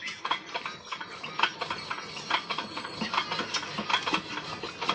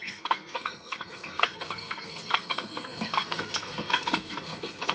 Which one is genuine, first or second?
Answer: first